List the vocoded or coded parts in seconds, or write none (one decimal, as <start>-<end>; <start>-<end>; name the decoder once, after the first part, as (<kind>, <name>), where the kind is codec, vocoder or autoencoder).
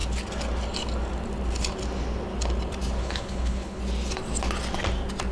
3.0-3.8 (codec, HILCodec)